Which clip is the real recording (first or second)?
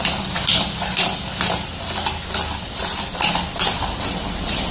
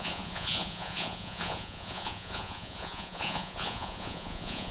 first